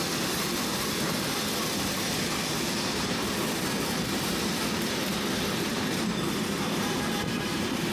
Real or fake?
fake